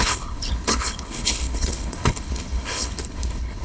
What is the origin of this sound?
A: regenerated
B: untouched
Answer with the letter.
A